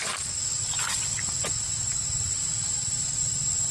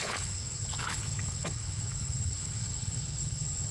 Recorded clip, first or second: first